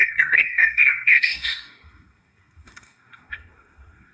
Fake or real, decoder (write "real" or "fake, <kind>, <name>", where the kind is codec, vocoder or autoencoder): fake, codec, SNAC